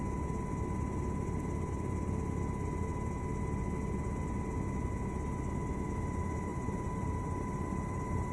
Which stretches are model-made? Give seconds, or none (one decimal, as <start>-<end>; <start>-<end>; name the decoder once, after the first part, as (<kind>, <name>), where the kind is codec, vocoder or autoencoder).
6.5-8.3 (vocoder, BigVGAN v2)